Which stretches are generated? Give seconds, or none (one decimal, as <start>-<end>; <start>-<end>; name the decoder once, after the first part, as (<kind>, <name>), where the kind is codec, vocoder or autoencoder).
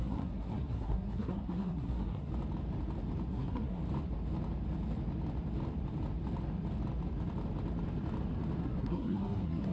0.0-2.3 (codec, SNAC); 3.3-3.8; 8.6-9.7